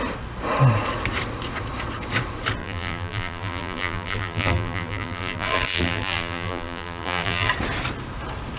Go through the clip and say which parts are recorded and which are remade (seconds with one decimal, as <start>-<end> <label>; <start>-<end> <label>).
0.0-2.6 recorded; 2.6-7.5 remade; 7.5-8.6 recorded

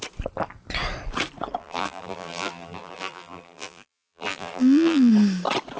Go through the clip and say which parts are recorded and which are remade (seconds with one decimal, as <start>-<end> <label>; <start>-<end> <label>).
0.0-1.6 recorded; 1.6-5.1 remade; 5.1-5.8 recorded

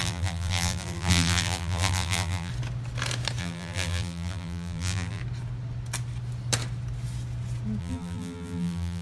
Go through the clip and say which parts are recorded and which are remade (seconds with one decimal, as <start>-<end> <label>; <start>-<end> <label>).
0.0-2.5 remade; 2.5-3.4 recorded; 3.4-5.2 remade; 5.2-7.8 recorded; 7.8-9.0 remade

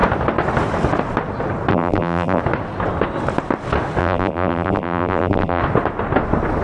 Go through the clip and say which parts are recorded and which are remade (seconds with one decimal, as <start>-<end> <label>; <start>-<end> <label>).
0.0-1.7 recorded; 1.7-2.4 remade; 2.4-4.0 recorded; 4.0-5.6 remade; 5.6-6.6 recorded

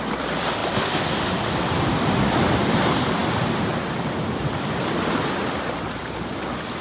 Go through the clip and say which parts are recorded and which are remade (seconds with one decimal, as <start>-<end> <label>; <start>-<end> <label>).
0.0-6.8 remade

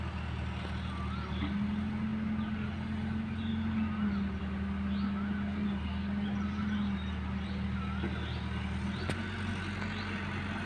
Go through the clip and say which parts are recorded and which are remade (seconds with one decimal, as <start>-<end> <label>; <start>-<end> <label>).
0.0-10.7 recorded

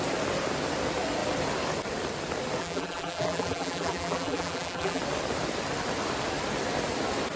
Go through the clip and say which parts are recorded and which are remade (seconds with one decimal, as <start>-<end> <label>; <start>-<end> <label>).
0.0-2.6 recorded; 2.6-5.0 remade; 5.0-7.4 recorded

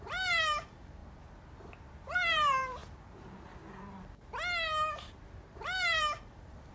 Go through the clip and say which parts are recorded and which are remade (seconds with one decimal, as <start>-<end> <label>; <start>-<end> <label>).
0.0-1.0 remade; 1.0-2.0 recorded; 2.0-2.8 remade; 2.8-5.3 recorded; 5.3-6.7 remade